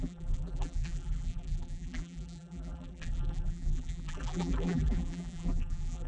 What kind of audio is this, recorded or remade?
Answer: remade